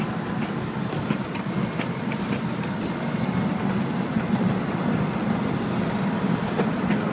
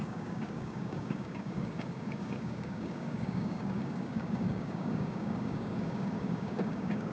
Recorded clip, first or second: first